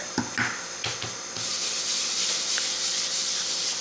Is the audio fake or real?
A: real